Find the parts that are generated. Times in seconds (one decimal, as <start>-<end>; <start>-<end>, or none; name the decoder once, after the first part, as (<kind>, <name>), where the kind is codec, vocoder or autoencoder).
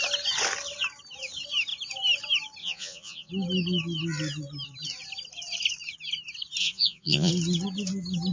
2.6-3.3 (vocoder, Vocos); 6.6-7.3